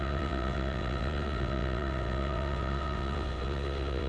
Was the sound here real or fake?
fake